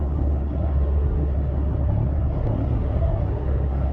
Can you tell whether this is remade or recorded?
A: remade